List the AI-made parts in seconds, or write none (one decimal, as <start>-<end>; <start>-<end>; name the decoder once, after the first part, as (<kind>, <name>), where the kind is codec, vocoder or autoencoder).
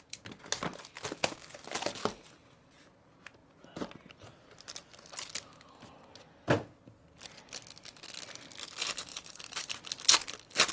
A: 9.1-9.7 (vocoder, BigVGAN v2)